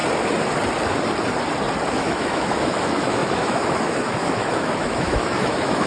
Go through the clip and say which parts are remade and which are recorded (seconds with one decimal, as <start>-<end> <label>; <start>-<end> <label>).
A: 0.0-1.9 recorded; 1.9-5.9 remade